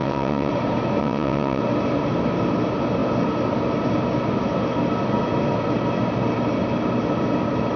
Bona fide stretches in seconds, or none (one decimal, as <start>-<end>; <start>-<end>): 0.5-1.0; 1.6-7.8